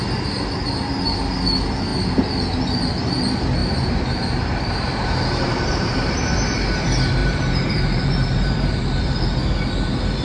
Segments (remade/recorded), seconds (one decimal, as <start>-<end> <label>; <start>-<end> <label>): 0.0-3.6 recorded; 3.6-6.1 remade; 6.1-7.2 recorded; 7.2-9.0 remade; 9.0-10.2 recorded